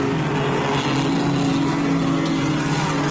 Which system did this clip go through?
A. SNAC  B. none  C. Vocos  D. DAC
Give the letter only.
B